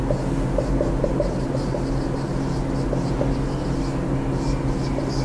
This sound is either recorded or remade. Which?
recorded